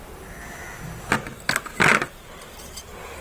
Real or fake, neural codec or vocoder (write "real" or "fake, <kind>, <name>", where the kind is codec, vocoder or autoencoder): real